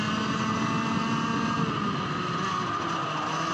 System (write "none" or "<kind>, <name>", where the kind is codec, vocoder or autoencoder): none